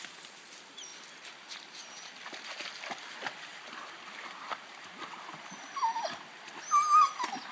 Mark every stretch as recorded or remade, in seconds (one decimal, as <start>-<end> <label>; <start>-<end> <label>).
0.0-7.5 recorded